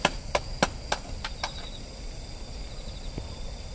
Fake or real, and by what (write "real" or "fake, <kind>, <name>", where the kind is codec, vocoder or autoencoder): real